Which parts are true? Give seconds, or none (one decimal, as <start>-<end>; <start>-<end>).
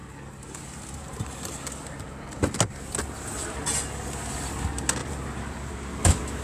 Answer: 0.0-5.0; 5.7-6.4